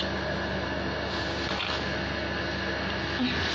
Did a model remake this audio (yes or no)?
no